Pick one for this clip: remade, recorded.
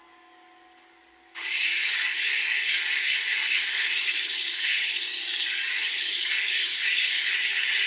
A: remade